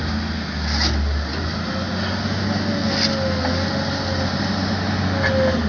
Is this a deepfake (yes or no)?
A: no